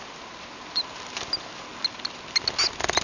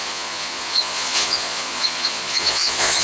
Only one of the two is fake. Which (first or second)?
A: second